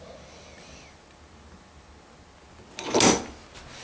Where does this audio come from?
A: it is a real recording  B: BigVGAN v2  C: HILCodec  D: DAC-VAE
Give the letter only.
A